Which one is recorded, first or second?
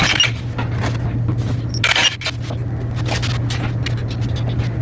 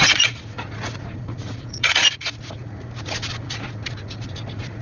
first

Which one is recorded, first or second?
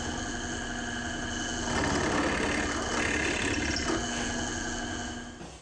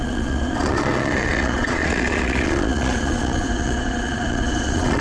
first